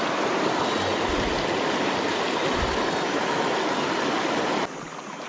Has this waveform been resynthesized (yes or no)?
no